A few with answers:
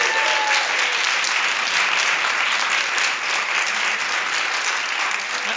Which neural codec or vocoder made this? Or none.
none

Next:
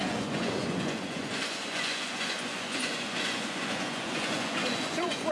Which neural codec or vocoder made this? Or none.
vocoder, Vocos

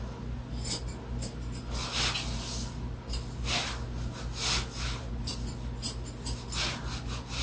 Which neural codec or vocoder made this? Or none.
none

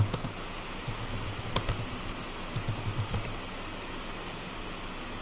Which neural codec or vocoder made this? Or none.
none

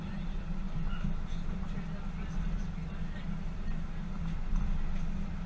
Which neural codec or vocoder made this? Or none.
none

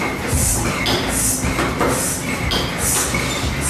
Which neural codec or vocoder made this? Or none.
none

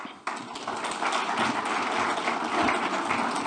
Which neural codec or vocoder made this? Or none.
none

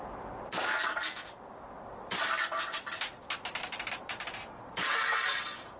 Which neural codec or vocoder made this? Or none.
none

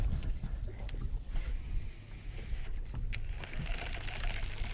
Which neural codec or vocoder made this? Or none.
none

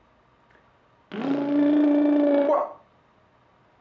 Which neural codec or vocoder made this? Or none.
none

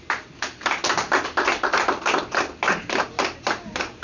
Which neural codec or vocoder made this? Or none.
none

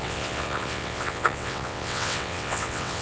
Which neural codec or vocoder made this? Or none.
vocoder, WaveNeXt